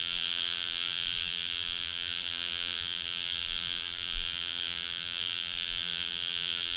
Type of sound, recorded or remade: remade